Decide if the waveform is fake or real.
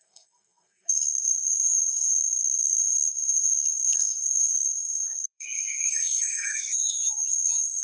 fake